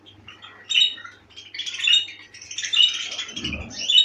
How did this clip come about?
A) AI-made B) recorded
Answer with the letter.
A